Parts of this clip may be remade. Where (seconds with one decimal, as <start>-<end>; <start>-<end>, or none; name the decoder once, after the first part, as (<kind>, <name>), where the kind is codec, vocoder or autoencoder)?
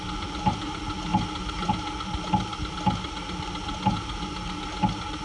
none